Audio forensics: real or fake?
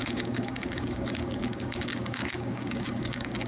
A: fake